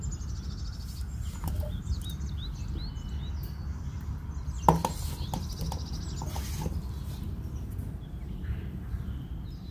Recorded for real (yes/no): yes